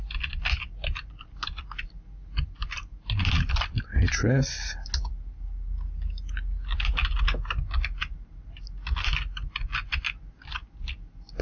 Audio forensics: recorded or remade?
recorded